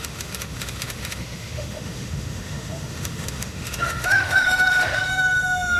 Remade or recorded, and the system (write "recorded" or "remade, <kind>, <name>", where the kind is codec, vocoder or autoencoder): remade, autoencoder, DAC-VAE